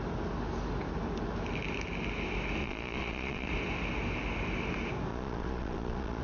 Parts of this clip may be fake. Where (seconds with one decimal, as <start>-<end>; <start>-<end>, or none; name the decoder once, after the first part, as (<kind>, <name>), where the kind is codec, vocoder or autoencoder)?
2.6-3.5 (vocoder, Vocos); 5.1-6.2

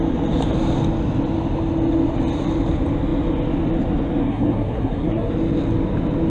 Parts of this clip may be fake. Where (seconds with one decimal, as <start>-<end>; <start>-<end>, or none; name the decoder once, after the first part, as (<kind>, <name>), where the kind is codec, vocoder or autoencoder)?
4.2-5.3 (codec, SNAC)

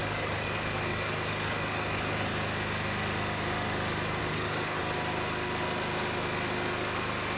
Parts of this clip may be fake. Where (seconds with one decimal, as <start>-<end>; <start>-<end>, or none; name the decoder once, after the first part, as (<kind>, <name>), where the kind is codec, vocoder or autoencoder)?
0.0-2.3 (codec, DAC); 4.2-4.8

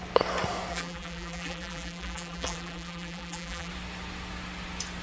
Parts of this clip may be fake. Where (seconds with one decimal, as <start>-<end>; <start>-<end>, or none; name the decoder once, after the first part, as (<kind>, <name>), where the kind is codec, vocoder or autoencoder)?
0.7-3.7 (vocoder, BigVGAN v2)